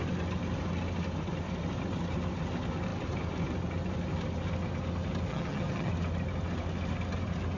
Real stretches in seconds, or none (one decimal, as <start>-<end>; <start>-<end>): 0.0-5.3; 5.9-7.6